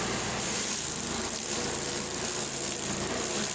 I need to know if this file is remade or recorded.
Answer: recorded